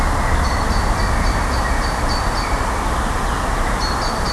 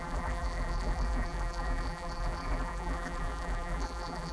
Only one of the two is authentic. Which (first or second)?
first